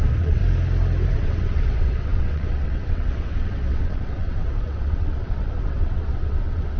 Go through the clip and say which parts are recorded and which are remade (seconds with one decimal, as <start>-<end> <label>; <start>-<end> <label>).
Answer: 0.0-0.4 remade; 0.4-1.1 recorded; 1.1-6.8 remade